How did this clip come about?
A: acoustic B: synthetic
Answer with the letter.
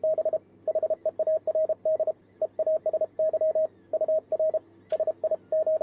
A